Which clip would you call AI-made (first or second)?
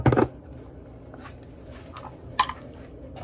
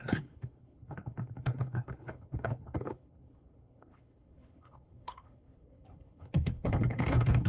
second